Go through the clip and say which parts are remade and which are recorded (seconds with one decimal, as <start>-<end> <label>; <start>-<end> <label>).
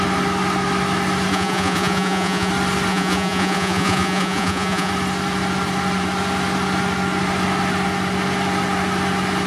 0.0-1.3 recorded; 1.3-2.5 remade; 2.5-2.9 recorded; 2.9-4.9 remade; 4.9-9.5 recorded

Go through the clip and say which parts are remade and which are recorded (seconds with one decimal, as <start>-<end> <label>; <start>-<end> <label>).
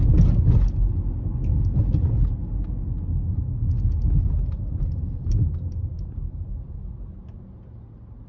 0.0-8.3 recorded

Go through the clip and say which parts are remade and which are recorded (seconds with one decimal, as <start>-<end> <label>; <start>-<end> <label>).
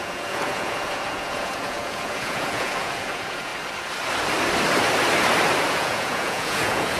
0.0-3.5 remade; 3.5-5.7 recorded; 5.7-7.0 remade